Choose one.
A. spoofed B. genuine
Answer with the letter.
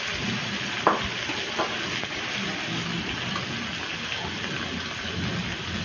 B